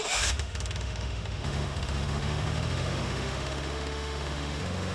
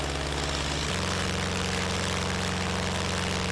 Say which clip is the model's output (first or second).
first